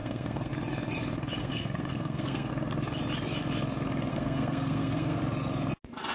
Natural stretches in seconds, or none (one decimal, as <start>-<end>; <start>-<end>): 0.5-1.4; 2.5-4.1; 5.2-6.1

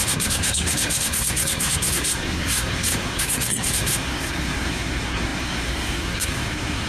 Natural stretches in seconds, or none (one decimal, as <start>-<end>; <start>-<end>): none

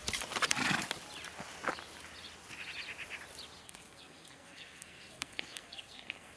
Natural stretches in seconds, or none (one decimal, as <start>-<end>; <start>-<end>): 0.0-3.6

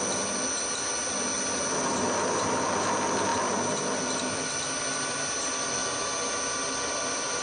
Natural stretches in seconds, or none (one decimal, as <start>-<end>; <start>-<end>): 0.0-7.4

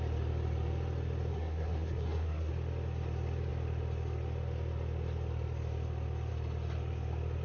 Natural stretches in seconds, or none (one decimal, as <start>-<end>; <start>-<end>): 0.0-1.3; 2.5-7.4

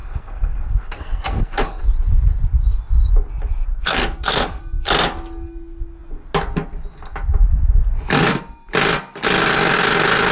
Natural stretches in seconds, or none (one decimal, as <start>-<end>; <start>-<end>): 1.8-3.7; 4.6-10.3